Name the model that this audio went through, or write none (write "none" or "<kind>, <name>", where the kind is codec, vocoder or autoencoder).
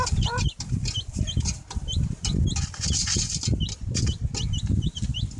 none